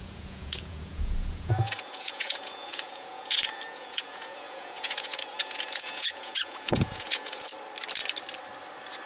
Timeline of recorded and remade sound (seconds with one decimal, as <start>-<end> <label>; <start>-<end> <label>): 0.0-7.5 remade; 7.5-9.1 recorded